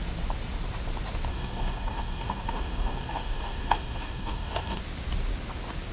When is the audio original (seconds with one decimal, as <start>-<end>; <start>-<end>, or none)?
0.0-1.3; 4.8-5.9